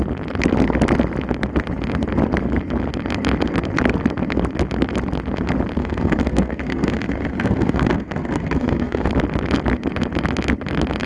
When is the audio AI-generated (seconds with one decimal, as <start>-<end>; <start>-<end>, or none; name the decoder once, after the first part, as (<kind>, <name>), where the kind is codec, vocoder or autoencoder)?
5.8-9.1 (codec, SNAC)